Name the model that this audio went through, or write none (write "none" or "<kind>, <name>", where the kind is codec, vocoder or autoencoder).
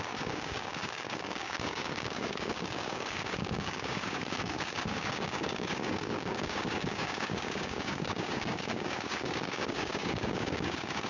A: codec, DAC